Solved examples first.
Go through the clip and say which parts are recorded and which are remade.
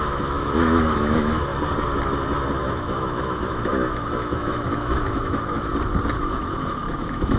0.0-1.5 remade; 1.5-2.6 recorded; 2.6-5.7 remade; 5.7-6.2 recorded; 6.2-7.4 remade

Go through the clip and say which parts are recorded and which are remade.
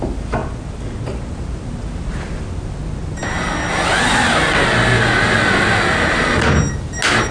0.0-7.3 recorded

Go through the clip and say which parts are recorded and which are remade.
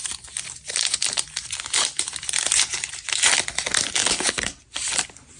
0.0-4.0 recorded; 4.0-4.6 remade; 4.6-5.4 recorded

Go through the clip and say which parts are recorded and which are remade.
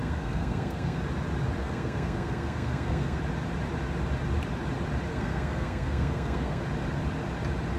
0.0-1.0 remade; 1.0-1.6 recorded; 1.6-3.2 remade; 3.2-5.1 recorded; 5.1-6.6 remade; 6.6-7.8 recorded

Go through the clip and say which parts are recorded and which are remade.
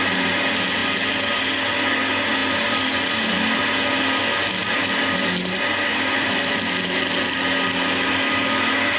0.0-2.4 recorded; 2.4-3.6 remade; 3.6-4.6 recorded; 4.6-5.2 remade; 5.2-5.9 recorded; 5.9-6.6 remade; 6.6-9.0 recorded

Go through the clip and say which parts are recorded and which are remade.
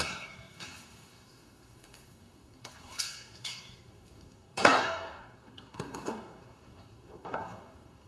0.0-8.1 remade